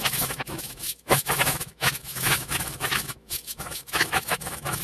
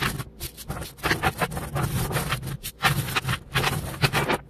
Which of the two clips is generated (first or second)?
first